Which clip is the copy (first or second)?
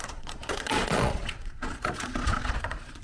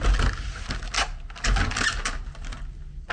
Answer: first